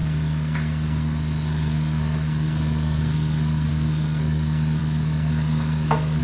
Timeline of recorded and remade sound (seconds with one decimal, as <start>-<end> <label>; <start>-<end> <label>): 0.0-6.2 remade

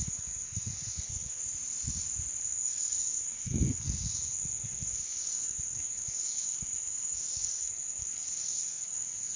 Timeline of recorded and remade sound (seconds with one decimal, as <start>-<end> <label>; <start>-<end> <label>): 0.0-1.4 remade; 1.4-2.4 recorded; 2.4-9.4 remade

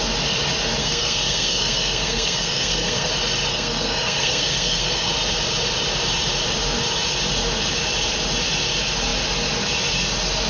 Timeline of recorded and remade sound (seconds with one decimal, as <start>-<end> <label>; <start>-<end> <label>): 0.0-0.8 recorded; 0.8-3.1 remade; 3.1-3.5 recorded; 3.5-5.1 remade; 5.1-10.5 recorded

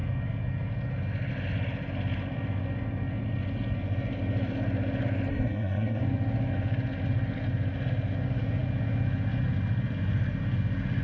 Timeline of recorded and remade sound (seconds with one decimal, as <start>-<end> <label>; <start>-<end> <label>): 0.0-5.3 recorded; 5.3-6.0 remade; 6.0-11.0 recorded

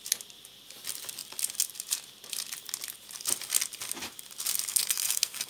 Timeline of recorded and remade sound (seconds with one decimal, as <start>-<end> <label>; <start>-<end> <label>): 0.0-4.7 recorded; 4.7-5.5 remade

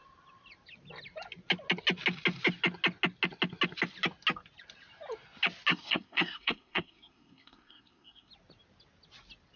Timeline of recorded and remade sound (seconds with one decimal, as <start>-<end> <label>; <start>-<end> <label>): 0.0-5.7 recorded; 5.7-8.3 remade; 8.3-9.6 recorded

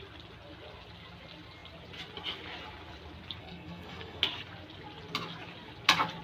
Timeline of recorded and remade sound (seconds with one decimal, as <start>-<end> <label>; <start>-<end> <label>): 0.0-3.4 recorded; 3.4-4.2 remade; 4.2-6.2 recorded